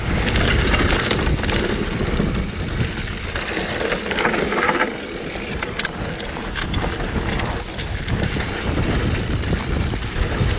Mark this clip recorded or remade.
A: recorded